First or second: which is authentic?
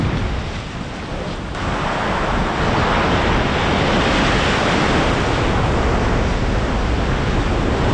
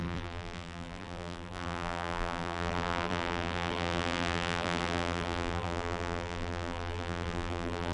first